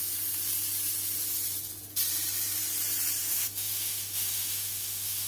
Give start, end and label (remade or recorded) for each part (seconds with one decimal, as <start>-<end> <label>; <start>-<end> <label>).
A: 0.0-3.2 recorded; 3.2-5.3 remade